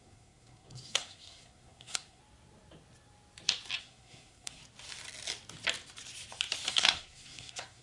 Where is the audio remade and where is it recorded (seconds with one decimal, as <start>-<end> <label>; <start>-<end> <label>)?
0.0-2.2 remade; 2.2-3.8 recorded; 3.8-4.6 remade; 4.6-6.7 recorded; 6.7-7.8 remade